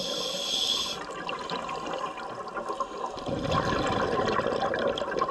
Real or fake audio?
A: real